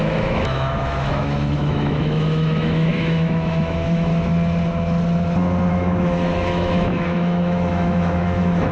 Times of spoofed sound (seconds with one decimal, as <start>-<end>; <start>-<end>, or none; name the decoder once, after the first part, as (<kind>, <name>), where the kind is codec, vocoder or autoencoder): 0.0-4.1 (autoencoder, DAC-VAE); 5.7-8.7